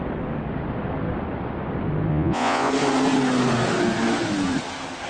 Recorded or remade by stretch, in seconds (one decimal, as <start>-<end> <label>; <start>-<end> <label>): 0.0-2.1 recorded; 2.1-2.7 remade; 2.7-5.1 recorded